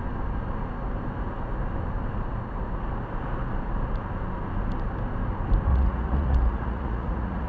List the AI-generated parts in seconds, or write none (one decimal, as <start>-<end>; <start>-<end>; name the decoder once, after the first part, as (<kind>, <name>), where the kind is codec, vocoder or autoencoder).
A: 5.7-7.5 (vocoder, Vocos)